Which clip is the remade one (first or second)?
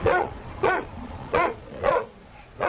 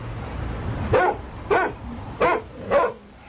first